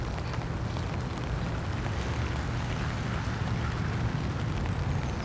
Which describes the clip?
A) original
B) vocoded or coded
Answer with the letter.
A